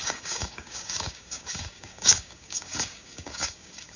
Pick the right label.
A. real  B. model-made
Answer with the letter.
B